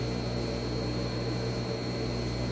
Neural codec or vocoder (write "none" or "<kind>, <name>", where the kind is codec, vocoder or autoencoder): none